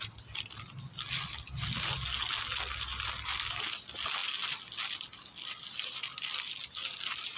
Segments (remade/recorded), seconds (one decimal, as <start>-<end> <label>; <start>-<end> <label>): 0.0-7.4 recorded